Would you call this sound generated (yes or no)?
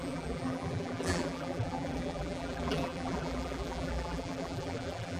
yes